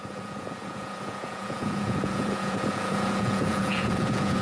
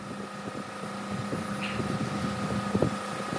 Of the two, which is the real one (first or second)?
second